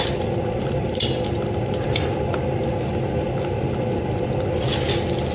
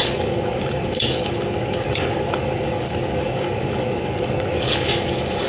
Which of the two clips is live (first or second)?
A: first